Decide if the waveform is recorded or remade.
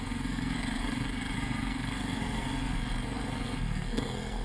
remade